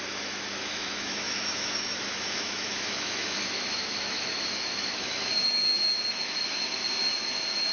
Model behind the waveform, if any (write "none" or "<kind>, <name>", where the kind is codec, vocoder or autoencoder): autoencoder, DAC-VAE